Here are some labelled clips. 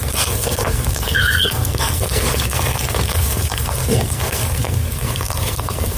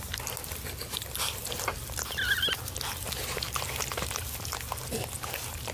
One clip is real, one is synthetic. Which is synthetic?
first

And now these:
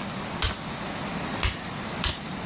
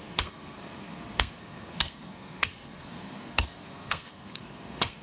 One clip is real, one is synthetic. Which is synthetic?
second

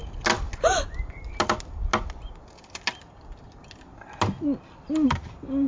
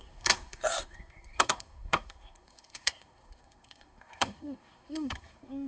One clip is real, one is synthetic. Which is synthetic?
second